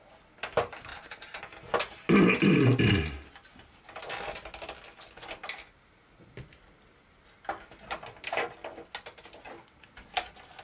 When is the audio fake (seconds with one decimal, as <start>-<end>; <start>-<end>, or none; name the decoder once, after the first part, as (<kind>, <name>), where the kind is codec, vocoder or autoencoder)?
none